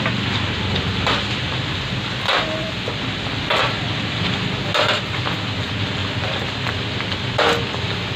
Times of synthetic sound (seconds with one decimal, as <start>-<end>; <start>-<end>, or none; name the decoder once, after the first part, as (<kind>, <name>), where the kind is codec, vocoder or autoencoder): none